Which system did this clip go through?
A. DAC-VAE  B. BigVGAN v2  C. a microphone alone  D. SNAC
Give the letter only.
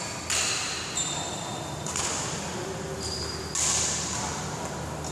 C